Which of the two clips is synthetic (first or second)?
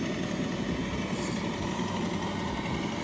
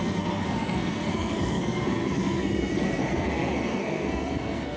second